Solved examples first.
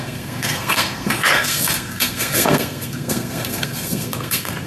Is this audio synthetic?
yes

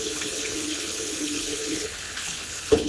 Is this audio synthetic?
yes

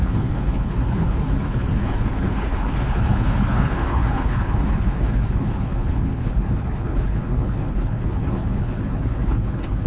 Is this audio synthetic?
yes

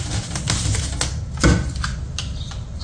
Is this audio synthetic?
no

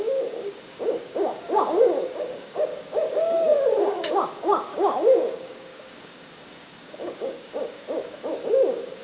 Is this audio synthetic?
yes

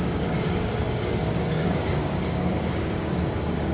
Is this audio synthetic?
yes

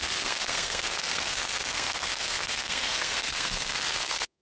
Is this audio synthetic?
yes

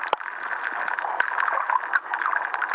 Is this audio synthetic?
no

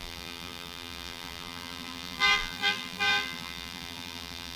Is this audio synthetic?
yes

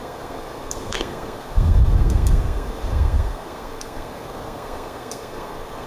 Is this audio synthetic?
yes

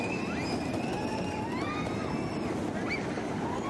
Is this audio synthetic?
no